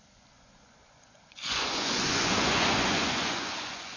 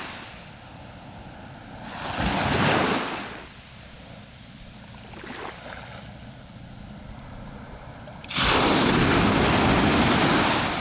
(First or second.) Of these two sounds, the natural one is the second